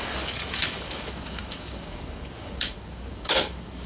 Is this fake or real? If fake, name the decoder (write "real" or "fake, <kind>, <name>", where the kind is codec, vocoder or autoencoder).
fake, codec, DAC